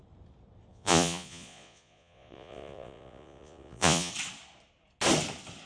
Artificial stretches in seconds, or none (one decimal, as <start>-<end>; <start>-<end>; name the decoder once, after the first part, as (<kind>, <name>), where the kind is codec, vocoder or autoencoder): 0.7-4.1 (vocoder, Vocos)